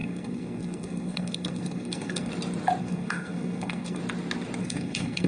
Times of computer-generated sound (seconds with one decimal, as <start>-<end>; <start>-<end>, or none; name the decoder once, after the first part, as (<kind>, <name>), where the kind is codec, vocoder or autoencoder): 0.0-2.3 (codec, SNAC); 2.8-4.0; 4.6-5.3